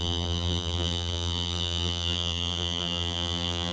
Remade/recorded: remade